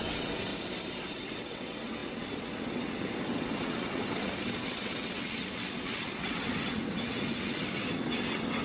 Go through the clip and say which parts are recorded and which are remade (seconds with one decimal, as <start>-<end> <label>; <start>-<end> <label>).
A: 0.0-0.5 remade; 0.5-1.1 recorded; 1.1-8.6 remade